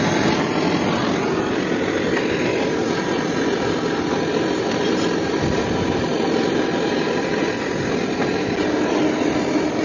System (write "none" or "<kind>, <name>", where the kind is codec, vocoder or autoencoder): none